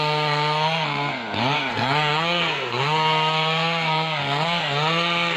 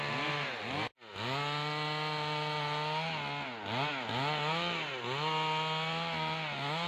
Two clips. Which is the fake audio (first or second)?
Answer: first